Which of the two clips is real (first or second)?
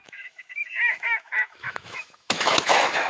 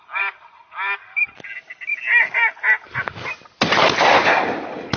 second